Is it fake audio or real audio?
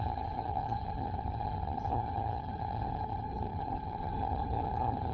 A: fake